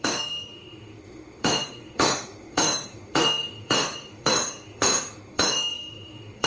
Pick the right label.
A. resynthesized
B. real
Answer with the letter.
A